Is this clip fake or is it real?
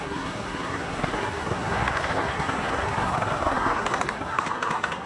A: fake